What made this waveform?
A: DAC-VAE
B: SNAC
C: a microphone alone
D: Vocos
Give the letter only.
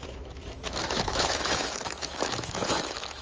A